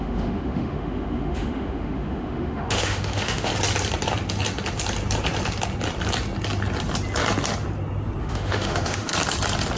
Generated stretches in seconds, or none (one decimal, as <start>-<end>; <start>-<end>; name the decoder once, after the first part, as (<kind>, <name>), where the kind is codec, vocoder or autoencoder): 0.0-3.5 (autoencoder, DAC-VAE); 8.2-9.1